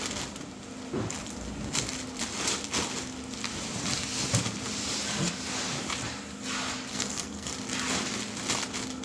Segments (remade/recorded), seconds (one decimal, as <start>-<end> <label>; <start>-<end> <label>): 0.0-6.9 recorded; 6.9-7.5 remade; 7.5-9.0 recorded